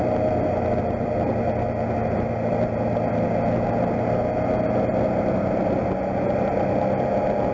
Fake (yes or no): no